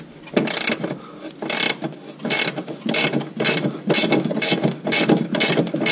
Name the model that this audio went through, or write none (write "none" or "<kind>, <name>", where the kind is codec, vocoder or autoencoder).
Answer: none